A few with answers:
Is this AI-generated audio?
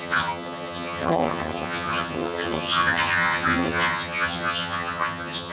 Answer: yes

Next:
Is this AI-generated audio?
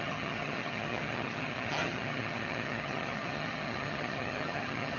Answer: yes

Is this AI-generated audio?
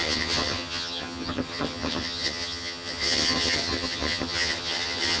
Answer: yes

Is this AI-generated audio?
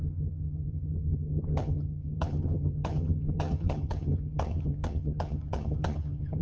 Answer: yes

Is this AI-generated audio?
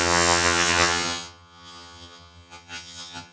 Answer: yes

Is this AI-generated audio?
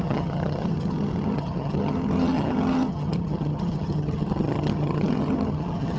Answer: yes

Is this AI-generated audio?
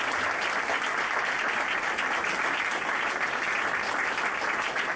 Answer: no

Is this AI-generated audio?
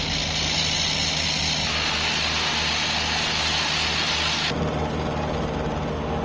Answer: no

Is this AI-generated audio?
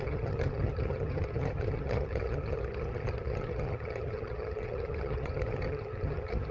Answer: yes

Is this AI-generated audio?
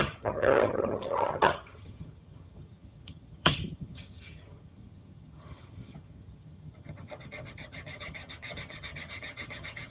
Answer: yes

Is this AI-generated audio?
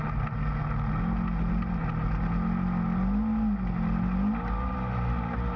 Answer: no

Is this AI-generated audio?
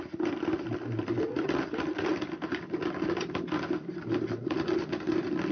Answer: no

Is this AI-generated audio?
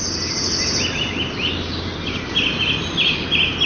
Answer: no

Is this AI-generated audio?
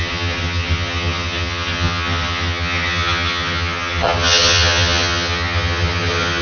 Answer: yes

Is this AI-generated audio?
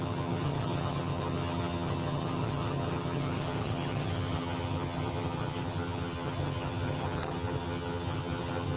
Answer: yes